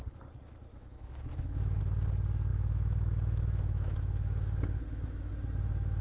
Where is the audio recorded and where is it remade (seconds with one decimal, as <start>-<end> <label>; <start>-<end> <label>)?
0.0-0.7 recorded; 0.7-1.8 remade; 1.8-2.5 recorded; 2.5-5.3 remade; 5.3-6.0 recorded